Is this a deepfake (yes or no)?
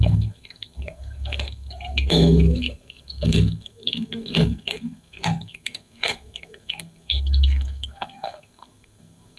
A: yes